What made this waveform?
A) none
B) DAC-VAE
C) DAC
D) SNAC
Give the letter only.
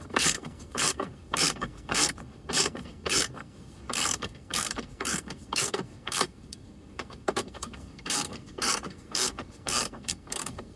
D